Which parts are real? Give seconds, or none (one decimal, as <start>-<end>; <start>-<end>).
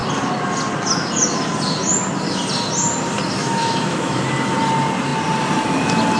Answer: 0.0-3.4; 4.2-6.2